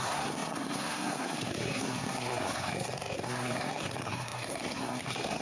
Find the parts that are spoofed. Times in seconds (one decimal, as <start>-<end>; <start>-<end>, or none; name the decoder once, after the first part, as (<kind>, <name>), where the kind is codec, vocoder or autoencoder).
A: 0.0-5.4 (codec, SNAC)